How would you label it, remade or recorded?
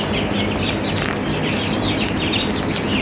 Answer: recorded